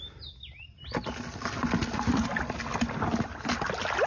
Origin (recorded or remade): recorded